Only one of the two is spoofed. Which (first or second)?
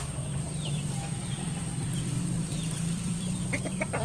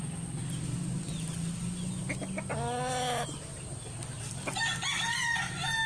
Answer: first